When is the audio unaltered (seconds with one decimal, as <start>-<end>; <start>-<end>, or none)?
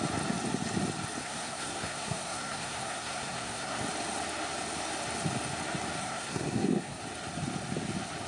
0.0-1.2; 3.8-6.0; 7.0-8.3